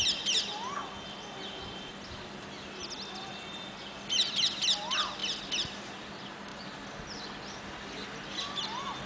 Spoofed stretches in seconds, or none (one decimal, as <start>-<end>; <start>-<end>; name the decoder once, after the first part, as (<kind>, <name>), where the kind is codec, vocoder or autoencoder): none